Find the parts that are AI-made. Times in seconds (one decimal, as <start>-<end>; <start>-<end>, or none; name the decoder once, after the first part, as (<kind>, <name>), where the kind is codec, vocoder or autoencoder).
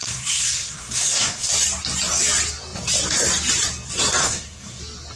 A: 0.0-1.5 (codec, SNAC); 4.2-4.8